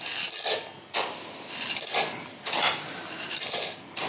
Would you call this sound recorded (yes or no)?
yes